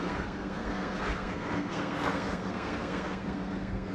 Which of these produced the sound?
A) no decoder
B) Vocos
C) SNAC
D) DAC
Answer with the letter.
C